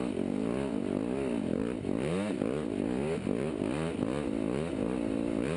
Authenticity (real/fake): real